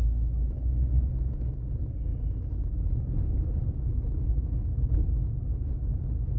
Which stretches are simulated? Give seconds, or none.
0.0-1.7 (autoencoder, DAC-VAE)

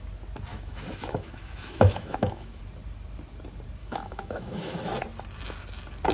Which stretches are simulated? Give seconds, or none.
0.5-2.6 (autoencoder, DAC-VAE); 3.8-4.9

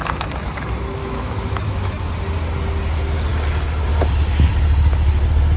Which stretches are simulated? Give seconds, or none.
1.0-2.0 (autoencoder, DAC-VAE)

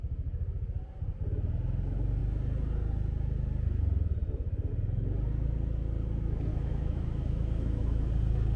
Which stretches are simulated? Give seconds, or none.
6.5-8.1 (autoencoder, DAC-VAE)

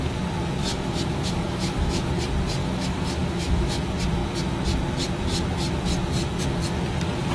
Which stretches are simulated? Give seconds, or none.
0.6-2.1 (autoencoder, DAC-VAE); 2.6-3.8